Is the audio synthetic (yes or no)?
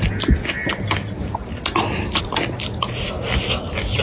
no